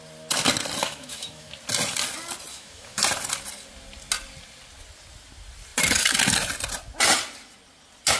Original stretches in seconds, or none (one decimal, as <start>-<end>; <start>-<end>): 0.0-0.8; 1.5-2.5; 3.0-8.2